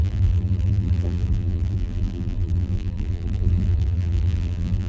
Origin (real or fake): fake